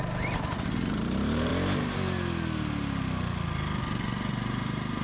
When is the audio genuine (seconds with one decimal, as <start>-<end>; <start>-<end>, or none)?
1.5-4.3